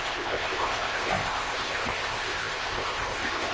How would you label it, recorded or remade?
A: remade